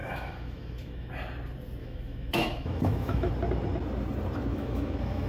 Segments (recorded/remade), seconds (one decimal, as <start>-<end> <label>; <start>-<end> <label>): 0.0-1.1 remade; 1.1-1.8 recorded; 1.8-3.3 remade; 3.3-4.5 recorded; 4.5-5.3 remade